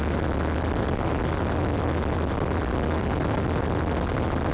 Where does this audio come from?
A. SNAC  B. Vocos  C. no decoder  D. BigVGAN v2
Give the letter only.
C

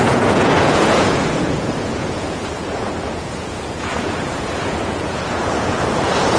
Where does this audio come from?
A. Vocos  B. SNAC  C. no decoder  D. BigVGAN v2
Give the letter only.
A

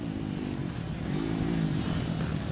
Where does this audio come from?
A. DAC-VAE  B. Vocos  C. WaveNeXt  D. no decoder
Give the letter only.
D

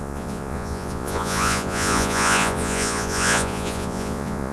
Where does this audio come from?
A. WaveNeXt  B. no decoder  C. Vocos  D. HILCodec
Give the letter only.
C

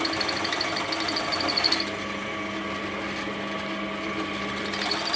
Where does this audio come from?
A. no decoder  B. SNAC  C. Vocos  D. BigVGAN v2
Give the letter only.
A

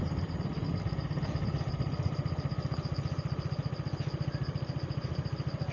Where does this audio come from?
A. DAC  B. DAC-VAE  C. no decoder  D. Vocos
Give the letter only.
C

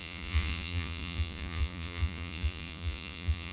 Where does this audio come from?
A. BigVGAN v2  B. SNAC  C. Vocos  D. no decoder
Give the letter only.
C